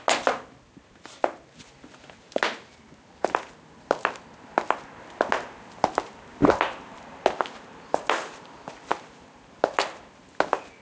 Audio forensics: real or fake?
real